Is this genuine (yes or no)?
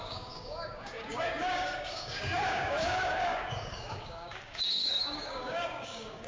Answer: no